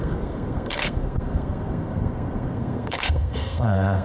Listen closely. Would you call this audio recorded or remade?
remade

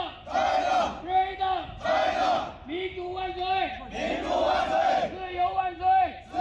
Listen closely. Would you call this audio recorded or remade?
recorded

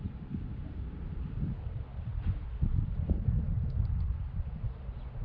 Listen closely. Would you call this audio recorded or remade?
recorded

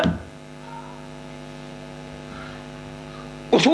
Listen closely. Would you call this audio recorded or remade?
recorded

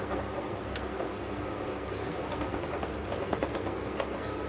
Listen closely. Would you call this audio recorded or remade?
remade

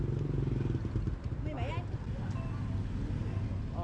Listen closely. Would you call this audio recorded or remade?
recorded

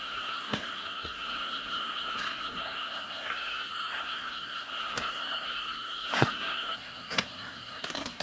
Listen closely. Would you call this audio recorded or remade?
remade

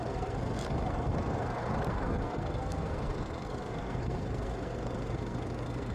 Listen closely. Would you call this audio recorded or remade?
remade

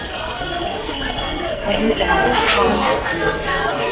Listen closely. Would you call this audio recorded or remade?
remade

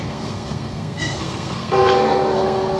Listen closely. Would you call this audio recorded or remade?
remade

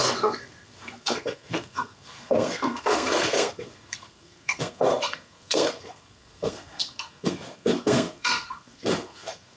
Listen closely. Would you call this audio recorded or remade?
remade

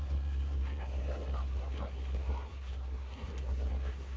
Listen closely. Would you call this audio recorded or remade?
remade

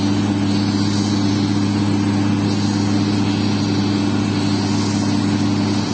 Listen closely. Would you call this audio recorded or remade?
recorded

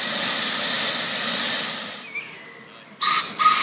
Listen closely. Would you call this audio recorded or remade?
recorded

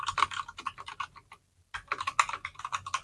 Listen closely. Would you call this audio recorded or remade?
recorded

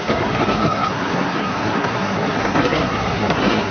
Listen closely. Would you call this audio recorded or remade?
remade